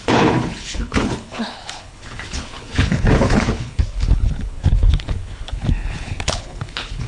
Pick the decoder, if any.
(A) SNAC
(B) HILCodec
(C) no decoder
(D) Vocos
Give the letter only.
B